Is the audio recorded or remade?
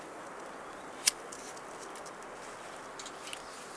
recorded